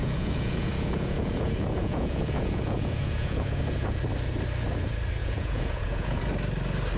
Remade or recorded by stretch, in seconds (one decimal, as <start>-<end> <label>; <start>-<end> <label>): 0.0-4.0 remade; 4.0-5.2 recorded; 5.2-6.2 remade; 6.2-7.0 recorded